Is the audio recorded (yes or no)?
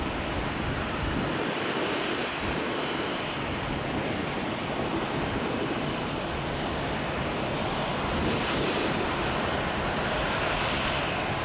yes